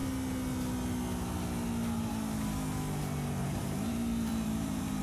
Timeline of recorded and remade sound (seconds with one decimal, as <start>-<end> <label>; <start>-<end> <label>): 0.0-3.4 recorded; 3.4-5.0 remade